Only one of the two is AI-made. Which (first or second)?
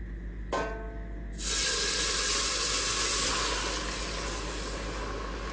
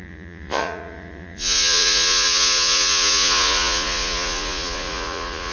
second